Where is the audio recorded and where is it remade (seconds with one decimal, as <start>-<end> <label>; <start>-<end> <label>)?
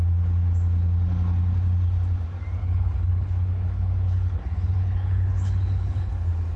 0.0-2.6 recorded; 2.6-6.1 remade; 6.1-6.6 recorded